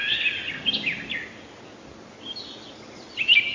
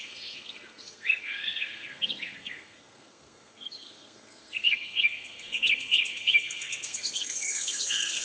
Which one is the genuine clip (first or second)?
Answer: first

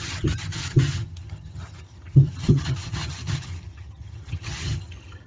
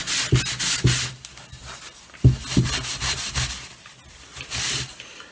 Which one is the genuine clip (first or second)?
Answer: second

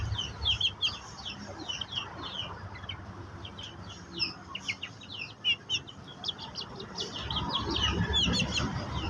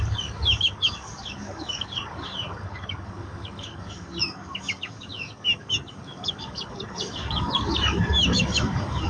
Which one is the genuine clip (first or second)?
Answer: first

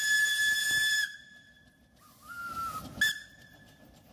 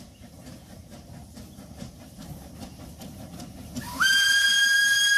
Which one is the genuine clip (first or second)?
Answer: first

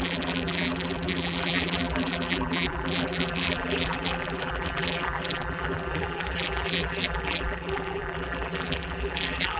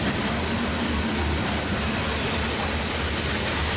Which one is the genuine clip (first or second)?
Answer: second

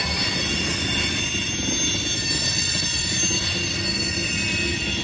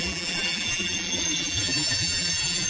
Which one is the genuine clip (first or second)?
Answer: first